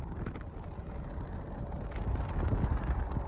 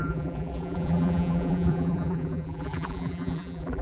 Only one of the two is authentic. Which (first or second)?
first